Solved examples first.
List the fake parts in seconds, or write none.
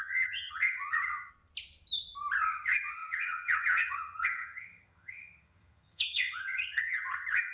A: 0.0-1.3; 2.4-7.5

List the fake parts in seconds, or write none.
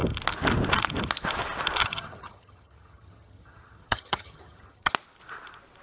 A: 1.8-4.9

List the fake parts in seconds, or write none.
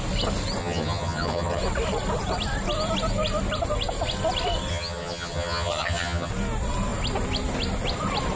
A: 0.6-1.6; 4.7-6.3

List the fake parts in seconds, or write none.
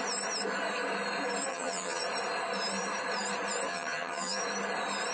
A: 1.5-2.0; 3.7-4.4